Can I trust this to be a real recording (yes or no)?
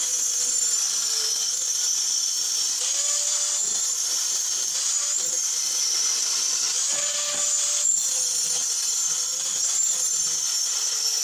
yes